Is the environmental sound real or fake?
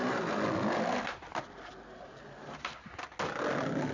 real